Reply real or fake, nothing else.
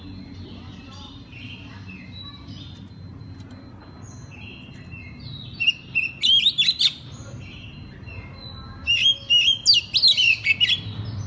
real